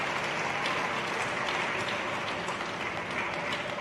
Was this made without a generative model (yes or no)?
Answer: yes